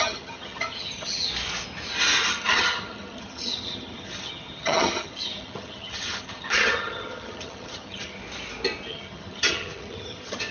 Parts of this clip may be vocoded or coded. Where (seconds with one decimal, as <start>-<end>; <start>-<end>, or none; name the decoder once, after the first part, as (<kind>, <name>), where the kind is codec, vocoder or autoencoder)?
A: 0.0-1.3 (vocoder, HiFi-GAN); 2.3-8.2; 8.9-10.5